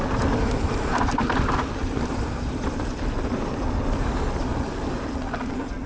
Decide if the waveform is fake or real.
real